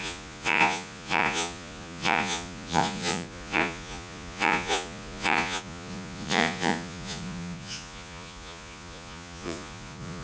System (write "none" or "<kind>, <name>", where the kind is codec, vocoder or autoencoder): vocoder, Vocos